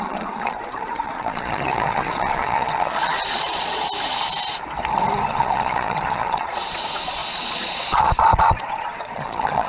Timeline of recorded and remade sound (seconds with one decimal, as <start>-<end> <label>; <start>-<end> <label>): 0.0-3.9 remade; 3.9-5.3 recorded; 5.3-9.7 remade